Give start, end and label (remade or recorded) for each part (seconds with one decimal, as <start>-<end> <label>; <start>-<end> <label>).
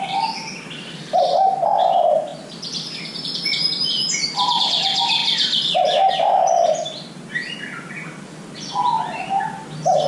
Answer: 0.0-10.1 recorded